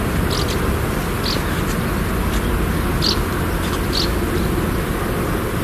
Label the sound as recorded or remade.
recorded